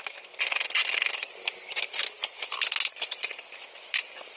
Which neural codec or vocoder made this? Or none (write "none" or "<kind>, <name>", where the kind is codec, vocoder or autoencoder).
none